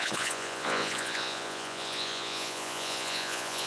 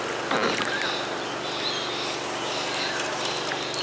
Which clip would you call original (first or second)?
second